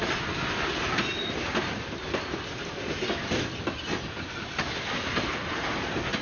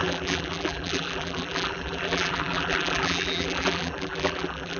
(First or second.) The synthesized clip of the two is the second